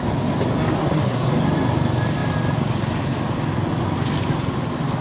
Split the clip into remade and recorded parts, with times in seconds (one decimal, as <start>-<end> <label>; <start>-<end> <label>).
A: 0.0-0.8 recorded; 0.8-1.3 remade; 1.3-5.0 recorded